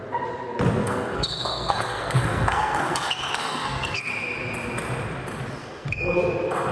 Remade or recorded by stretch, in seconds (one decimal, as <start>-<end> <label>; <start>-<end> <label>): 0.0-0.8 recorded; 0.8-4.1 remade; 4.1-5.6 recorded; 5.6-6.2 remade; 6.2-6.7 recorded